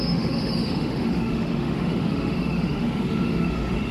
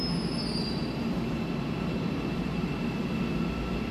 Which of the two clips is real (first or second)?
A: second